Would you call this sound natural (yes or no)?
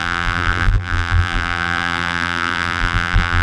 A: no